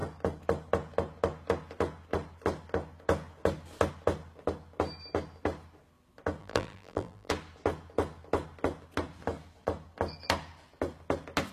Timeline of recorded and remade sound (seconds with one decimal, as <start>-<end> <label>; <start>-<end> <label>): 0.0-6.4 recorded; 6.4-7.3 remade; 7.3-11.5 recorded